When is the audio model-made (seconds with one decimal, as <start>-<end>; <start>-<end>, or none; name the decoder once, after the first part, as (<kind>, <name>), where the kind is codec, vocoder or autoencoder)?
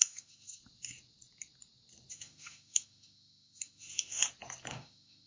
0.0-0.6 (autoencoder, DAC-VAE); 2.1-4.2; 4.7-5.3